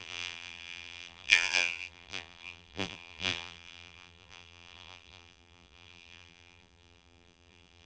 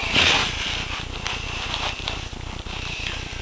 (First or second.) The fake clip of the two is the first